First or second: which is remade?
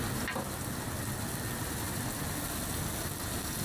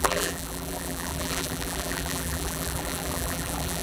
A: second